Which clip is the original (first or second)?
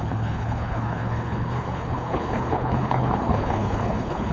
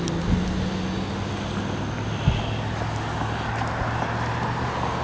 second